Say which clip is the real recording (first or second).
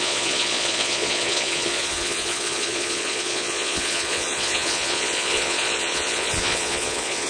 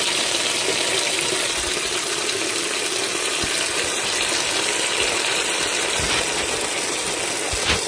second